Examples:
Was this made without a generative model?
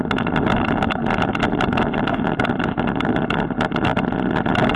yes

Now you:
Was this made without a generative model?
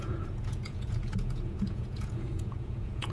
no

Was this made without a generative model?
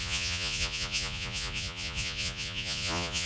no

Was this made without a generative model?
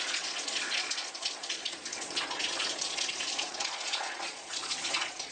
no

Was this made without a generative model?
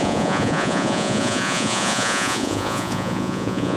no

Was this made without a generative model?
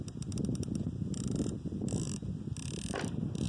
yes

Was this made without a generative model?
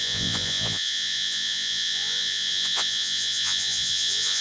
no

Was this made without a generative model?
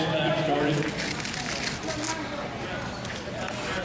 yes